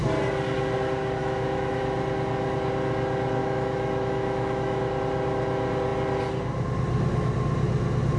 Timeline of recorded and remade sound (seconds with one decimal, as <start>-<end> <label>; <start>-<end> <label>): 0.0-1.2 recorded; 1.2-1.8 remade; 1.8-3.4 recorded; 3.4-4.8 remade; 4.8-8.2 recorded